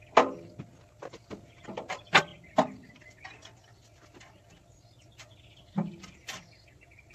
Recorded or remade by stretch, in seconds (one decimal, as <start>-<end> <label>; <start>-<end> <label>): 0.0-7.1 recorded